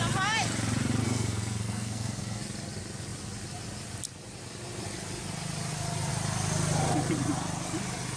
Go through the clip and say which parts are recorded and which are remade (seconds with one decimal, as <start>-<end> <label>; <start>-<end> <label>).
0.0-1.0 recorded; 1.0-2.4 remade; 2.4-8.2 recorded